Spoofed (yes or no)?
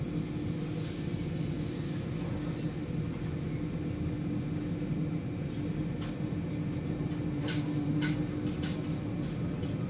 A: no